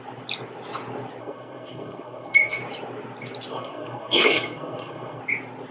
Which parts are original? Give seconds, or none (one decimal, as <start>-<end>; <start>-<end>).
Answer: 0.0-1.2; 2.6-3.5; 5.2-5.7